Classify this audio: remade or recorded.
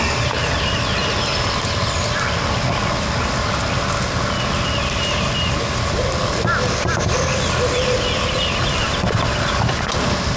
recorded